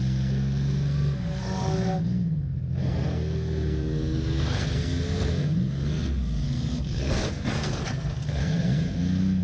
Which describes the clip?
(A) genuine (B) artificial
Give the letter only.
B